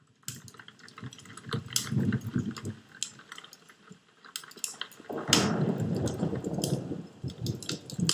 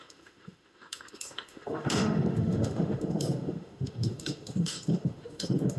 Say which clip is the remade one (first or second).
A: second